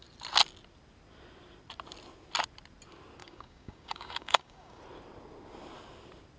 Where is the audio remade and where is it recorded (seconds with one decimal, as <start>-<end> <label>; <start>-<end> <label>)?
0.0-3.2 recorded; 3.2-4.8 remade; 4.8-6.4 recorded